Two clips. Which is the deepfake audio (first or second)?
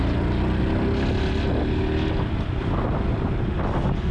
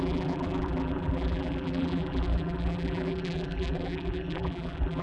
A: second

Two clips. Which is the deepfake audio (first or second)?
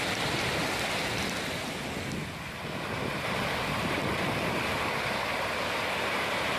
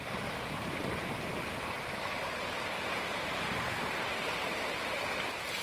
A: second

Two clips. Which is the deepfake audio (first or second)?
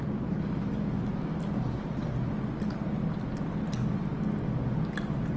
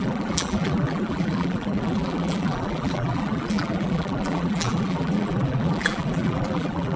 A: second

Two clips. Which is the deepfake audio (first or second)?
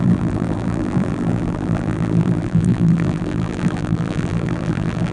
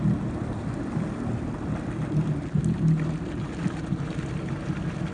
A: first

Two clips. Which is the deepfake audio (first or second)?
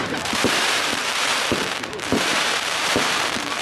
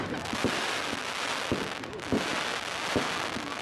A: first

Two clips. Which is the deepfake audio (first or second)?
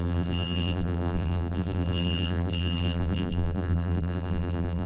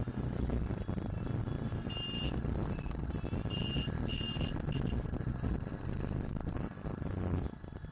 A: first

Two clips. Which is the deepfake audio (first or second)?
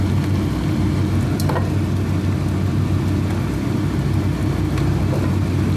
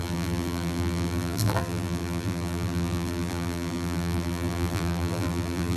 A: second